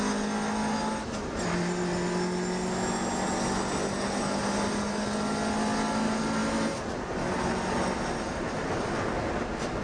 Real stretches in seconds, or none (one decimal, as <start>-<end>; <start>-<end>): 0.0-9.8